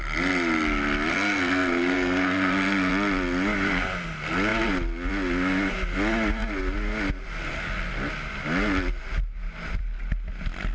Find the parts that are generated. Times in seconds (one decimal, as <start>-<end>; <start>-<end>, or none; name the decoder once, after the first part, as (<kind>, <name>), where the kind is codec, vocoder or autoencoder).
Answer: 1.1-2.9 (codec, SNAC)